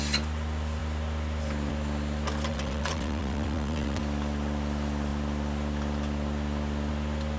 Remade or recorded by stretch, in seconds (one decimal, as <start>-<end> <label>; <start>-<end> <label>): 0.0-2.5 recorded; 2.5-4.0 remade; 4.0-7.4 recorded